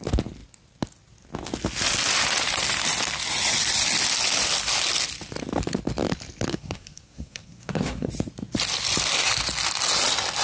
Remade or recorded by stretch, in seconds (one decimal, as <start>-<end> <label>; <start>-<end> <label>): 0.0-6.5 recorded; 6.5-8.1 remade; 8.1-10.4 recorded